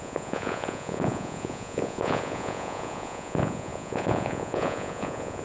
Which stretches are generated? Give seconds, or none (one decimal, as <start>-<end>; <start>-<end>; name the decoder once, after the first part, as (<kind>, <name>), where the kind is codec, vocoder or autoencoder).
0.0-5.4 (vocoder, Vocos)